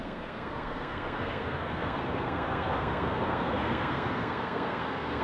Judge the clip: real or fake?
fake